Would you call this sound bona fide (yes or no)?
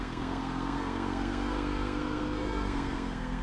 no